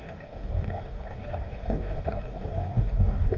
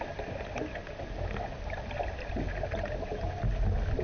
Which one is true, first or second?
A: second